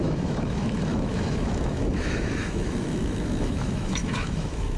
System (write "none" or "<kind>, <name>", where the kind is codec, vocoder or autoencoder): autoencoder, DAC-VAE